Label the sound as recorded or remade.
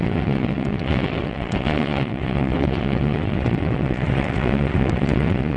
remade